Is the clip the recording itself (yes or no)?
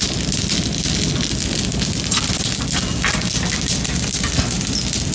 yes